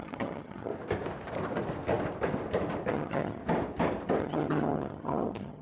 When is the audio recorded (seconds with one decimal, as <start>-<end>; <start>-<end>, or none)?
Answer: 0.7-2.9; 3.4-4.2